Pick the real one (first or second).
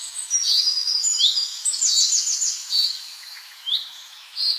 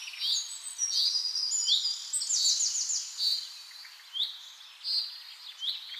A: second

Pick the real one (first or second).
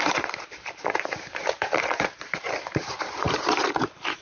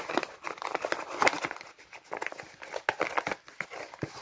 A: second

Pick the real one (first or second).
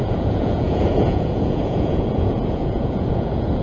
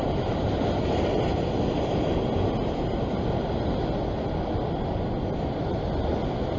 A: second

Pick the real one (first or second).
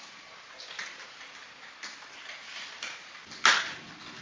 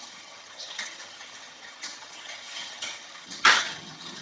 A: first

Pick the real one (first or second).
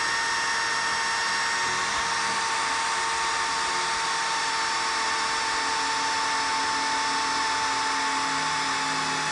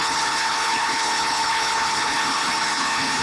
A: first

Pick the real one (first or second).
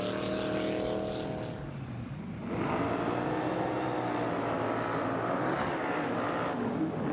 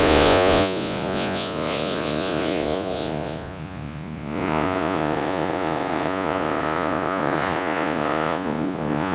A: first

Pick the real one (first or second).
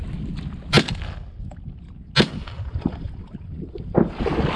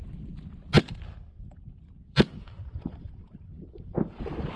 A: first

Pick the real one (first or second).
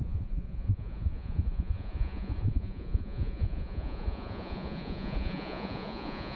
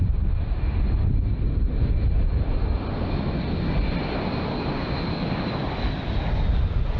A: second